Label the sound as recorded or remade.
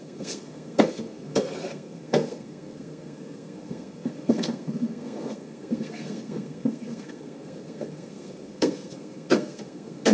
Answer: remade